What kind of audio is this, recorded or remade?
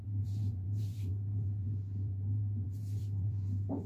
remade